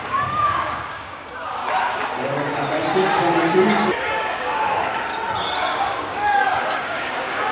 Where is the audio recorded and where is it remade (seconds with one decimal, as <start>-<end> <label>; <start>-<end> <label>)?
0.0-1.6 remade; 1.6-4.2 recorded; 4.2-5.1 remade; 5.1-5.6 recorded; 5.6-7.5 remade